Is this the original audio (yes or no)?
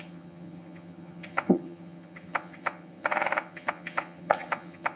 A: no